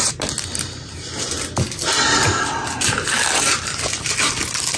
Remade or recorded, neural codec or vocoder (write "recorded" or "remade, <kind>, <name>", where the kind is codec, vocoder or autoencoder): recorded